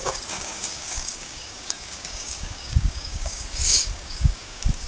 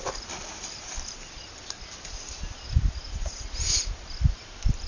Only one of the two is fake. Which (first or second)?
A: first